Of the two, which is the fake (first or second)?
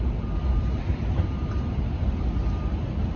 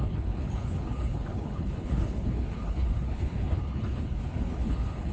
second